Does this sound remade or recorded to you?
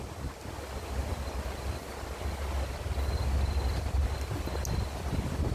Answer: recorded